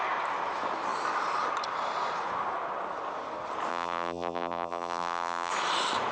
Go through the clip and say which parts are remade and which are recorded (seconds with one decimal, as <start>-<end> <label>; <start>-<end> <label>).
0.0-3.7 recorded; 3.7-5.5 remade; 5.5-6.1 recorded

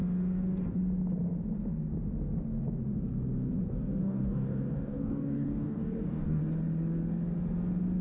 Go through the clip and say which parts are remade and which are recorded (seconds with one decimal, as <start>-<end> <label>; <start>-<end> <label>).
0.0-4.0 recorded; 4.0-6.4 remade; 6.4-8.0 recorded

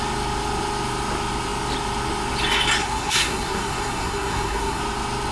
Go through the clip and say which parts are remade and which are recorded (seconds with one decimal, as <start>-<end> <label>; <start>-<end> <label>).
0.0-2.8 recorded; 2.8-4.8 remade; 4.8-5.3 recorded

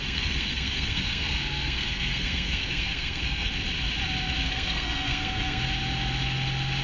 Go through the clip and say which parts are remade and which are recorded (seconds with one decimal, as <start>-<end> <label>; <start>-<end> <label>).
0.0-3.5 remade; 3.5-4.4 recorded; 4.4-5.6 remade; 5.6-6.8 recorded

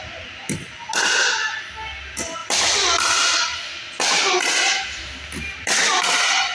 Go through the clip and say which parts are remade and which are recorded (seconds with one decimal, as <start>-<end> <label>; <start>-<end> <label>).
0.0-6.5 recorded

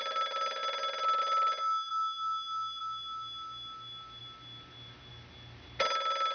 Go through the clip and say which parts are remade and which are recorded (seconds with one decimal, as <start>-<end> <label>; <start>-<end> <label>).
0.0-6.3 recorded

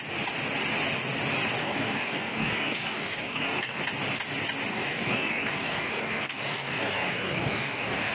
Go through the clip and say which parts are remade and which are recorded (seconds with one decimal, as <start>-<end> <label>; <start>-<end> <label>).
0.0-1.6 recorded; 1.6-3.8 remade; 3.8-4.7 recorded; 4.7-8.1 remade